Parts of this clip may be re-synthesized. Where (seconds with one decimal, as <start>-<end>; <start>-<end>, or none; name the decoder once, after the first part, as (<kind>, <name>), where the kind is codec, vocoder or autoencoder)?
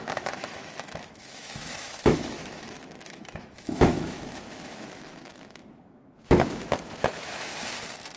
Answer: 0.0-7.5 (autoencoder, DAC-VAE)